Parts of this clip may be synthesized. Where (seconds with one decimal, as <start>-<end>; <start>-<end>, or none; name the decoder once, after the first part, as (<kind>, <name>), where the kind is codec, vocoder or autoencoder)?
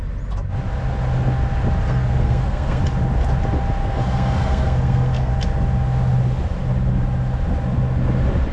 1.8-2.8 (codec, SNAC); 3.8-5.3